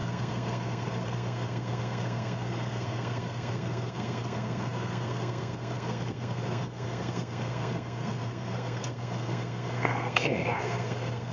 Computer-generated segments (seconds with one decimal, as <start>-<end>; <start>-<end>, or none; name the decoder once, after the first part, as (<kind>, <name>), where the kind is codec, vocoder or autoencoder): 0.0-11.3 (codec, SNAC)